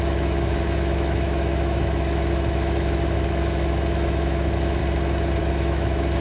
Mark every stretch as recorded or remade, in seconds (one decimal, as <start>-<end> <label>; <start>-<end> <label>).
0.0-4.8 remade; 4.8-5.4 recorded; 5.4-6.2 remade